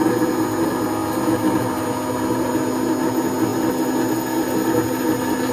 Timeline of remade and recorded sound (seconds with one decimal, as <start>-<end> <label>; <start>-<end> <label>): 0.0-5.5 recorded